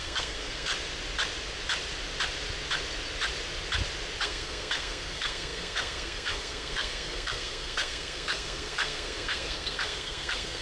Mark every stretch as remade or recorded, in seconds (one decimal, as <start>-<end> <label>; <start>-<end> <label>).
0.0-0.7 remade; 0.7-4.2 recorded; 4.2-10.6 remade